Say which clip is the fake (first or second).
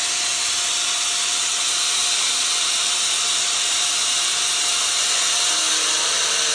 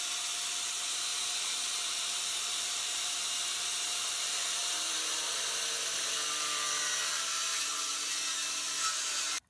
second